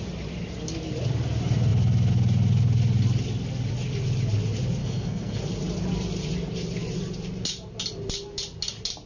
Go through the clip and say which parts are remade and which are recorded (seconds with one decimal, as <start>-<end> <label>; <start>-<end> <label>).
0.0-4.8 recorded; 4.8-5.4 remade; 5.4-9.1 recorded